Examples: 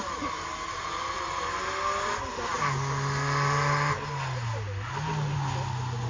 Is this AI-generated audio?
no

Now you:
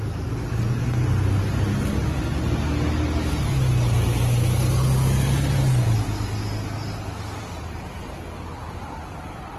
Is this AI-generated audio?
no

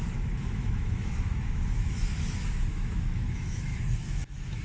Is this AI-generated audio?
yes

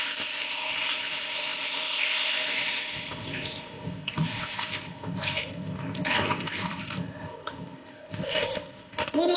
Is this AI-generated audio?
yes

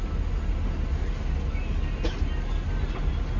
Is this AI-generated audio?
no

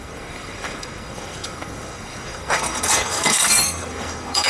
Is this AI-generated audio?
yes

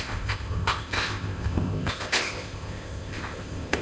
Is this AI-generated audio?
yes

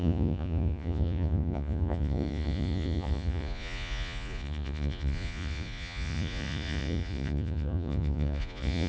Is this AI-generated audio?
yes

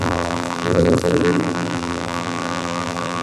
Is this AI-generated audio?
yes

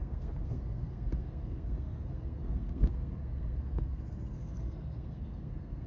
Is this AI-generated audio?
yes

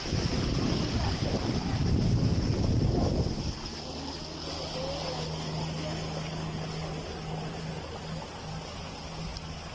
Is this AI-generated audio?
no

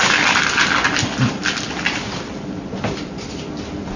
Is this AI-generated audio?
no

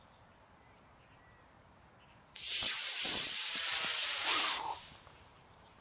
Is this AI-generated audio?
yes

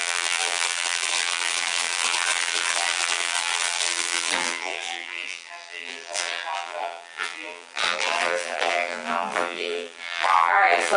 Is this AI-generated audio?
yes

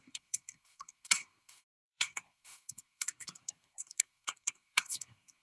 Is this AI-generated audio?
yes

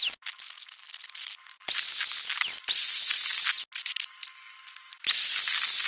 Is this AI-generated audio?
no